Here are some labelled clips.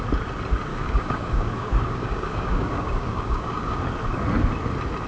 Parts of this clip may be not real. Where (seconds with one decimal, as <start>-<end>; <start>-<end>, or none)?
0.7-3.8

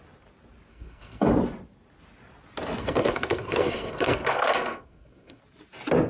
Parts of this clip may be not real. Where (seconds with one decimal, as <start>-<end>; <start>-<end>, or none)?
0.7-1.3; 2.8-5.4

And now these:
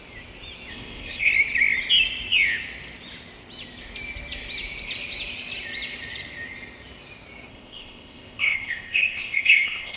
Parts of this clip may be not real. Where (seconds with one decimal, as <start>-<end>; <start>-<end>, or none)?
0.7-1.3; 7.5-10.0